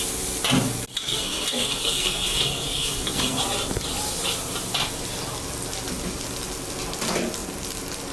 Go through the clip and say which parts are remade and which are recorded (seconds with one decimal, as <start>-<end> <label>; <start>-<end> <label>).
0.0-0.9 recorded; 0.9-3.4 remade; 3.4-8.1 recorded